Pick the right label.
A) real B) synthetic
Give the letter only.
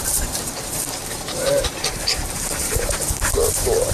B